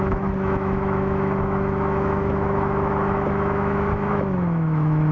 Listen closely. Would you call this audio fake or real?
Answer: fake